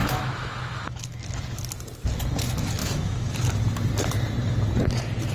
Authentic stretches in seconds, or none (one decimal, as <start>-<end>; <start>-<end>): 1.2-2.8; 3.3-5.3